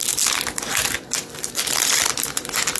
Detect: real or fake real